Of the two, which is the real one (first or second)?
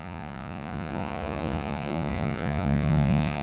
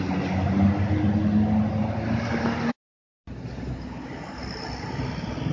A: second